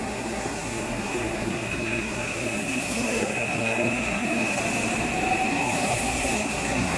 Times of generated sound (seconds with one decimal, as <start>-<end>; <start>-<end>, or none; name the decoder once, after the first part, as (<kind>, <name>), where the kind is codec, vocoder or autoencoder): 0.0-4.6 (codec, SNAC); 5.5-7.0